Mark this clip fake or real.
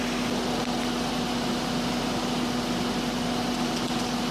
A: real